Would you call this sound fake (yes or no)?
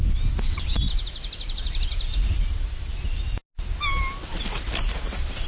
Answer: no